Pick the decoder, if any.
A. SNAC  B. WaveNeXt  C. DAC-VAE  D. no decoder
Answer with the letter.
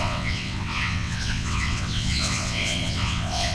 B